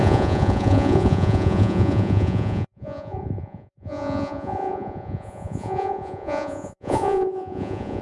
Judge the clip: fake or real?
fake